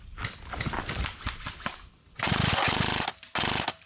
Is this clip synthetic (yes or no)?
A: no